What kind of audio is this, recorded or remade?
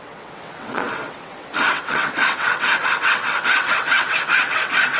remade